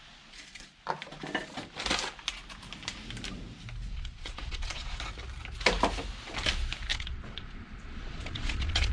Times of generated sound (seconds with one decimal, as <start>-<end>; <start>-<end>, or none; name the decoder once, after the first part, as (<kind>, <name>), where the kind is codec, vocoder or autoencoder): 3.9-5.0 (vocoder, Vocos); 6.9-8.9